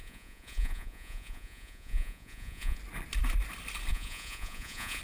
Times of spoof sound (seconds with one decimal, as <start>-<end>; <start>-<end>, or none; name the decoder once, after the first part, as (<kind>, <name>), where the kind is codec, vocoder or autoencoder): 0.0-2.8 (vocoder, Vocos); 3.9-5.0